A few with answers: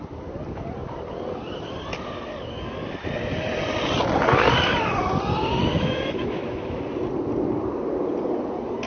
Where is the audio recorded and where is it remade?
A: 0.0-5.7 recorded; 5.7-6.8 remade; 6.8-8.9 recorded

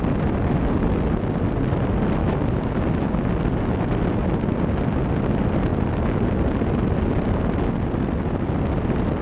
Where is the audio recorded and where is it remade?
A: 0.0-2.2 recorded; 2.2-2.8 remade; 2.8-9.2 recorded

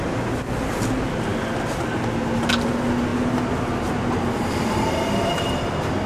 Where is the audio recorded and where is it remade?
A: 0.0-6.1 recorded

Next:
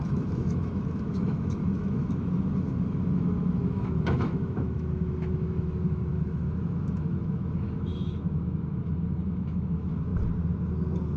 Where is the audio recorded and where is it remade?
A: 0.0-10.1 remade; 10.1-11.2 recorded

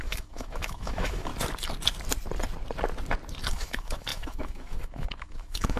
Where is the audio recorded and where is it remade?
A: 0.0-1.3 remade; 1.3-3.5 recorded; 3.5-5.8 remade

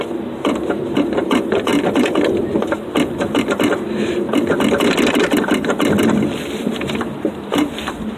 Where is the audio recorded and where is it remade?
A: 0.0-8.2 recorded

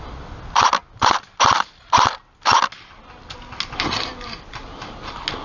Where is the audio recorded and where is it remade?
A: 0.0-5.4 recorded